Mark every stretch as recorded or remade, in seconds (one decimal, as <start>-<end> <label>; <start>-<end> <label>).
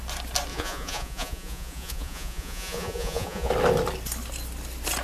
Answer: 0.0-0.5 recorded; 0.5-3.5 remade; 3.5-5.0 recorded